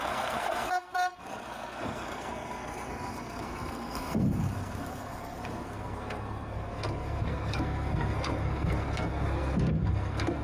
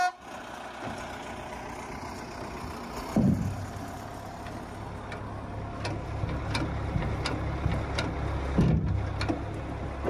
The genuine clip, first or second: second